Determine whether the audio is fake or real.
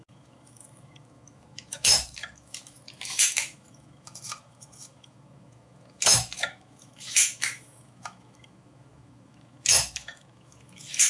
fake